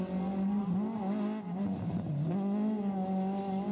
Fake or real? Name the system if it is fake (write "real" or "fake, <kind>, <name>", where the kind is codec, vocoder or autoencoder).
real